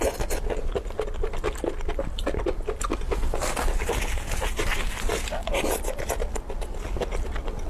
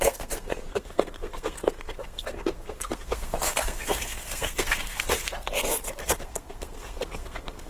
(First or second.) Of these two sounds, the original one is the first